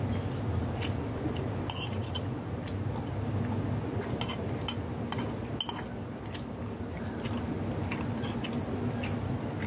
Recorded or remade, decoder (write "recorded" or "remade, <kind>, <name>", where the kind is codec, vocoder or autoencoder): recorded